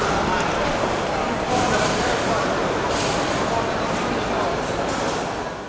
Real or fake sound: real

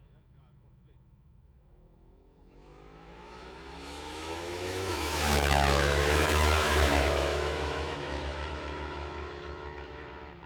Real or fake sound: fake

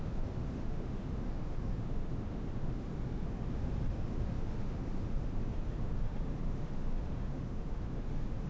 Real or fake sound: fake